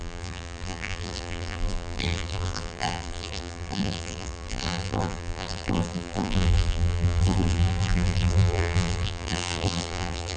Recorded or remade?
remade